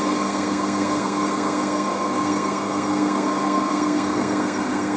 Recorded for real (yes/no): no